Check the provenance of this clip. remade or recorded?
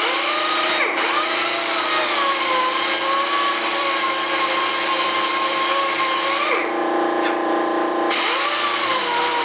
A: remade